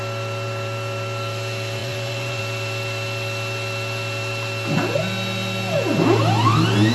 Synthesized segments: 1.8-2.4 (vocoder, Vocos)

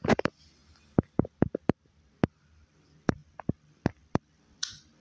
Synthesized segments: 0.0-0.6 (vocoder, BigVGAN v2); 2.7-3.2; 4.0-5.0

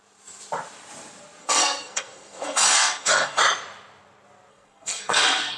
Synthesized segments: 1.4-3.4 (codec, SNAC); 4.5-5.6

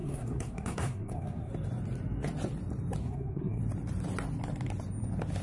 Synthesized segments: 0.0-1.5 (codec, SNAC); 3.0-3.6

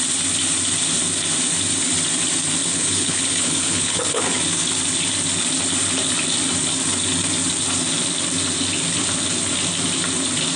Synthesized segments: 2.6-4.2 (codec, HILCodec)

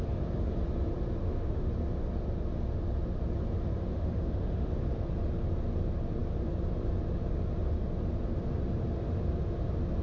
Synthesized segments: 1.2-1.7 (autoencoder, DAC-VAE); 3.9-4.7

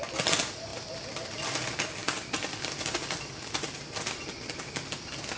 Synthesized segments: none